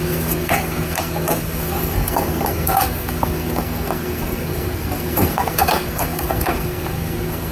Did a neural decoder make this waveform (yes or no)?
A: yes